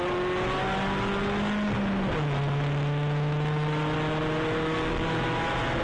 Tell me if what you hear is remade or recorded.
recorded